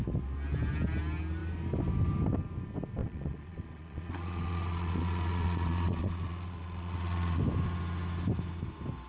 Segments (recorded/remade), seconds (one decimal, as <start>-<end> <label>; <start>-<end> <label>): 0.0-3.0 recorded; 3.0-7.4 remade; 7.4-9.1 recorded